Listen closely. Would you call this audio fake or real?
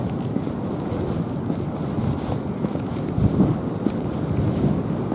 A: real